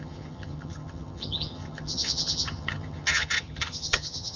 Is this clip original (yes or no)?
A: no